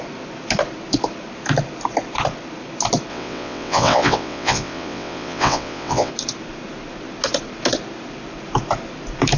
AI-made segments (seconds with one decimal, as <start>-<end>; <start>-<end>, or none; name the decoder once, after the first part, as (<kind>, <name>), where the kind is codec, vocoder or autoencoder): 3.1-6.1 (vocoder, WaveNeXt)